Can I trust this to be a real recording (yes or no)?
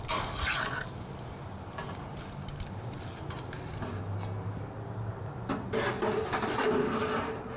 yes